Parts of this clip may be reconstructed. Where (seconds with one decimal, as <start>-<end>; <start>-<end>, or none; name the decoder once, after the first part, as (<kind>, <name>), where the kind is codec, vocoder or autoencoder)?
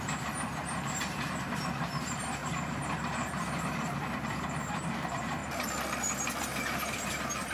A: 0.0-5.4 (vocoder, BigVGAN v2); 6.4-7.5